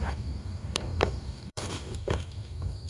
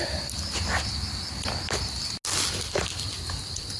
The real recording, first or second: second